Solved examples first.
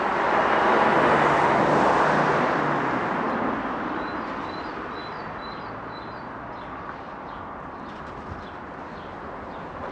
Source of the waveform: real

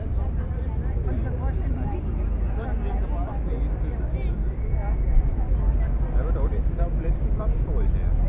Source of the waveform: real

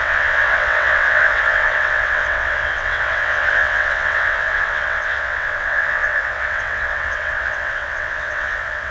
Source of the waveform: fake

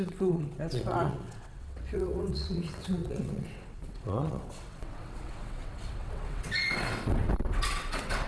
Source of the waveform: fake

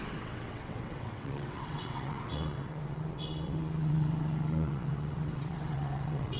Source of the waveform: fake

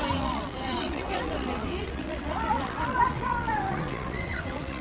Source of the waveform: fake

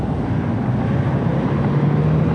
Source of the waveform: real